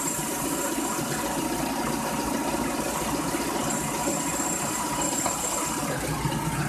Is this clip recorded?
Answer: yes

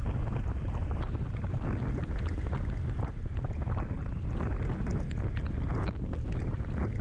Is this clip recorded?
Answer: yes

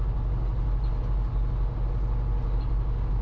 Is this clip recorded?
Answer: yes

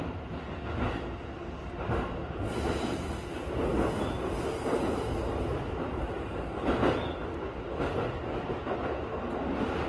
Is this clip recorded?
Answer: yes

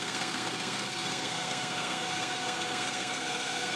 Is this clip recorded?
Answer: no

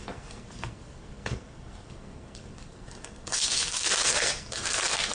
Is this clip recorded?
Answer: no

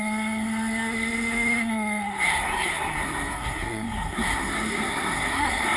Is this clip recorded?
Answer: no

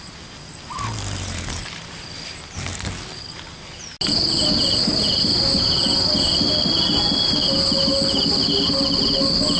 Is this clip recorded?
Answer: yes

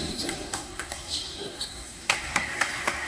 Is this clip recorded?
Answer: no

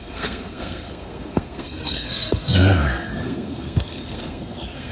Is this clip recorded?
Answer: no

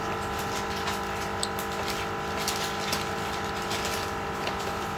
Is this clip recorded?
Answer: yes